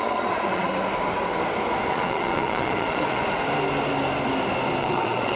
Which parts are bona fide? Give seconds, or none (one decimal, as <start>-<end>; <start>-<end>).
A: 0.7-1.9; 3.2-4.8